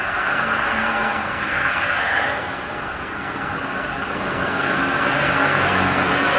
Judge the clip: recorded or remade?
remade